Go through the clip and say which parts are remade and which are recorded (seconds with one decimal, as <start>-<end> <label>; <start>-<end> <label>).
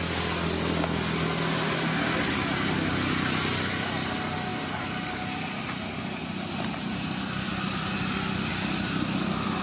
0.0-9.6 recorded